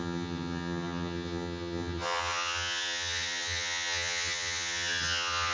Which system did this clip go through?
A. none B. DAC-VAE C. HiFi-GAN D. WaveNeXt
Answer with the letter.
C